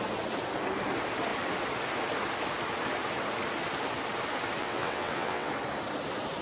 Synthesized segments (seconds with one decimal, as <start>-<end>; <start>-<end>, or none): 4.6-5.5